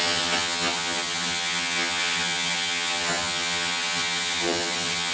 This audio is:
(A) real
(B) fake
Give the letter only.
B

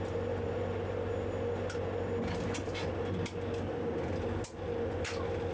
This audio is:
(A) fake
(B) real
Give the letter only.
B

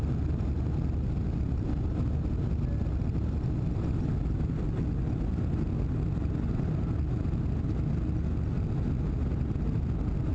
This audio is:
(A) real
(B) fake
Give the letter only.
A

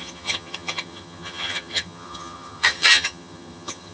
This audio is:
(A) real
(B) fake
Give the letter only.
B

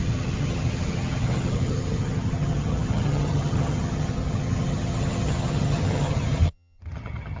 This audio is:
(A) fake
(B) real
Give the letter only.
A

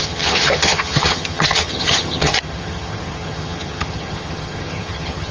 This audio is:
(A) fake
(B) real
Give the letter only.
A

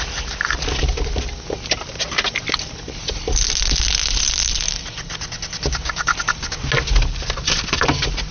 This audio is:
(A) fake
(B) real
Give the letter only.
B